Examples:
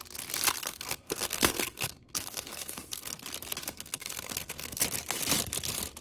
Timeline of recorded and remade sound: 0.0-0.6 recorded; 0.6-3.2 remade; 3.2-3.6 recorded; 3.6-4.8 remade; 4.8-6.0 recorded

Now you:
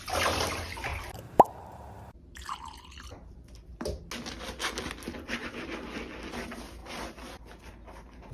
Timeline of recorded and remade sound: 0.0-0.9 recorded; 0.9-2.5 remade; 2.5-8.3 recorded

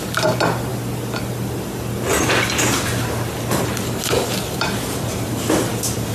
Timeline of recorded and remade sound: 0.0-6.1 recorded

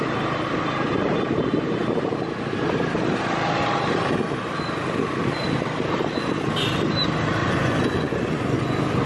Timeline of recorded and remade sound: 0.0-7.4 recorded; 7.4-8.7 remade; 8.7-9.1 recorded

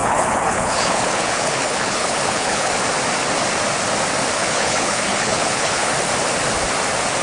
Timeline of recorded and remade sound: 0.0-2.7 remade; 2.7-4.4 recorded; 4.4-5.9 remade; 5.9-7.2 recorded